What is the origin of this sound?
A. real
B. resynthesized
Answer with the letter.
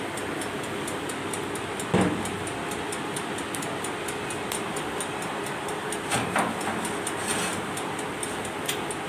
A